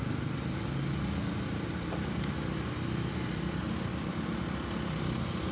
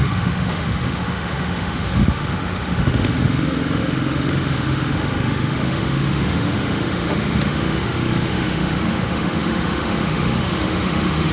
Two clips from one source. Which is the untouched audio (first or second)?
first